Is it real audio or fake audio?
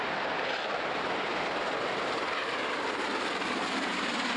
real